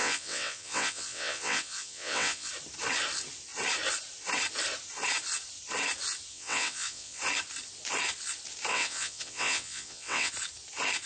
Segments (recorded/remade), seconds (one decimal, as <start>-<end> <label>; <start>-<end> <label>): 0.0-2.5 remade; 2.5-6.3 recorded; 6.3-7.2 remade; 7.2-8.7 recorded; 8.7-10.3 remade; 10.3-11.1 recorded